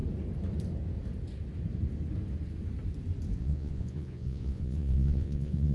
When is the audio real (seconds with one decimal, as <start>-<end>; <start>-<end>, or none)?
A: 0.0-3.4

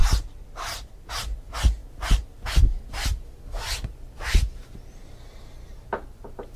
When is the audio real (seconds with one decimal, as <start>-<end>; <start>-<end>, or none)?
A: 0.0-6.6

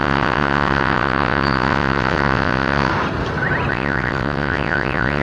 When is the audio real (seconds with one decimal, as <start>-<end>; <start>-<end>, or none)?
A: 2.9-3.7

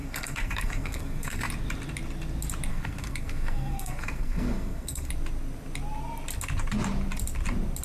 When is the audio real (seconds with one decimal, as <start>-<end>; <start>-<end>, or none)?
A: 1.5-2.7; 5.1-7.8

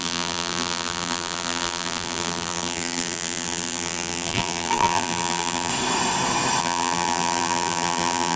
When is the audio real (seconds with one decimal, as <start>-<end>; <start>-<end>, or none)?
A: 5.7-6.6